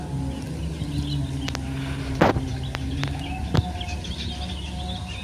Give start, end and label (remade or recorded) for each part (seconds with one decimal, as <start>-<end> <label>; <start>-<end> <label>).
0.0-5.2 recorded